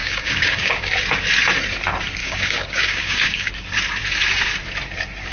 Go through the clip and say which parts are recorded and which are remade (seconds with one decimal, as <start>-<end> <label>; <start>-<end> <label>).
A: 0.0-0.9 remade; 0.9-2.2 recorded; 2.2-3.5 remade; 3.5-5.3 recorded